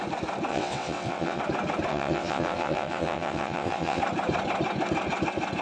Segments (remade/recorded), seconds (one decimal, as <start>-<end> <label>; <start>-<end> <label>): 0.0-0.5 recorded; 0.5-1.4 remade; 1.4-1.9 recorded; 1.9-4.0 remade; 4.0-5.6 recorded